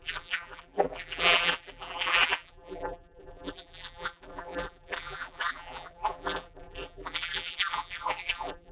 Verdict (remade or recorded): remade